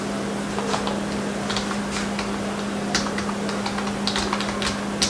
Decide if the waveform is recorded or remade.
recorded